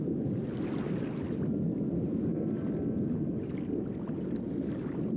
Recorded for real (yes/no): yes